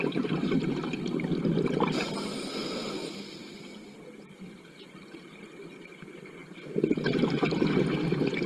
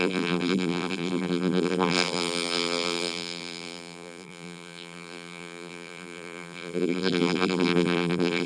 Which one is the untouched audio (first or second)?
first